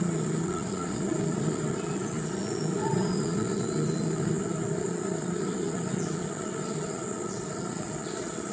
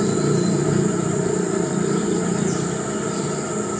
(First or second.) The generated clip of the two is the first